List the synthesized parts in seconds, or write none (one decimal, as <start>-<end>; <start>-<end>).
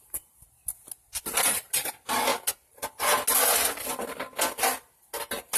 none